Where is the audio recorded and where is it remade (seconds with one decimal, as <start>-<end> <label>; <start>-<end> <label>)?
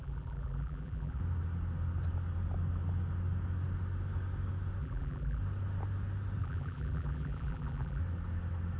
0.0-1.2 remade; 1.2-4.8 recorded; 4.8-5.4 remade; 5.4-6.4 recorded; 6.4-8.0 remade; 8.0-8.8 recorded